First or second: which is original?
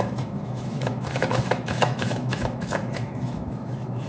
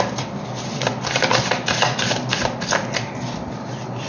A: second